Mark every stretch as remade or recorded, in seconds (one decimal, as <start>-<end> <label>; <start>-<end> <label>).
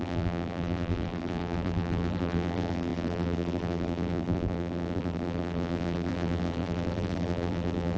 0.0-8.0 remade